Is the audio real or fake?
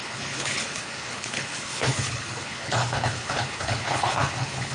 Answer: fake